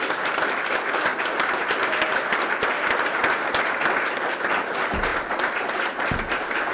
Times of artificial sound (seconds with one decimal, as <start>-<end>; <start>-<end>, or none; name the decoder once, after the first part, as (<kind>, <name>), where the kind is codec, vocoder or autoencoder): 0.0-3.2 (vocoder, BigVGAN v2); 4.4-5.1